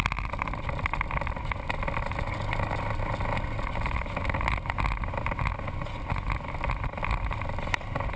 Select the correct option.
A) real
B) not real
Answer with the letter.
A